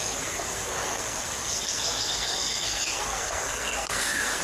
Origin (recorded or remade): remade